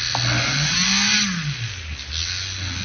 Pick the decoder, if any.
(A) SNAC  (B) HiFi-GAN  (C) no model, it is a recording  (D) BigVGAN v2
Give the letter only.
C